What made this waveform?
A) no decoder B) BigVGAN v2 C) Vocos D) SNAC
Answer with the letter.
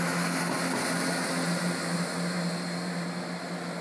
A